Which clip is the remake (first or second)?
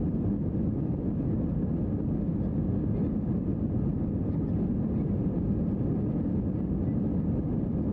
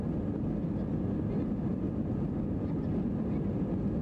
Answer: first